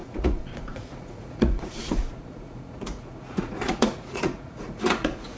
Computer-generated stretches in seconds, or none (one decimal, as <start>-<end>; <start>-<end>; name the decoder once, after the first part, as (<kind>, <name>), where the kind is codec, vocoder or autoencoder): 0.0-5.4 (vocoder, Vocos)